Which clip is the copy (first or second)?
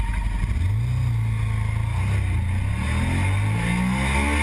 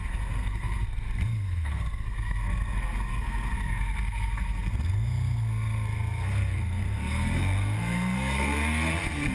second